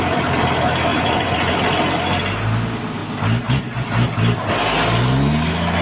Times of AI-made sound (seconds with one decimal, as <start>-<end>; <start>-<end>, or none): 0.9-1.5